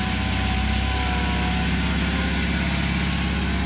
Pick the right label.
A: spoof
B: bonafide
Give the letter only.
B